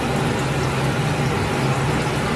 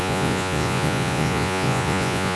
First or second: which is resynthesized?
second